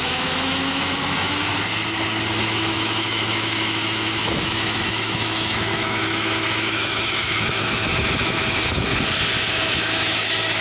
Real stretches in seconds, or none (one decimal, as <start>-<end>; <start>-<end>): 1.5-2.4; 8.9-9.5